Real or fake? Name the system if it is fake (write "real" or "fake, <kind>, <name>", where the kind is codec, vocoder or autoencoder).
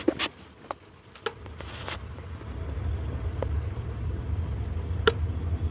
real